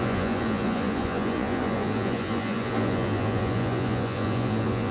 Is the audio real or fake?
fake